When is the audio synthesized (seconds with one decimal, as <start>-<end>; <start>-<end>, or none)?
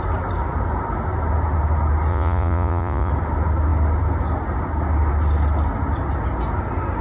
2.1-3.1